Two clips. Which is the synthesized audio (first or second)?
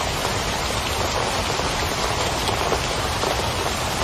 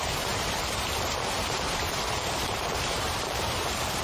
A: second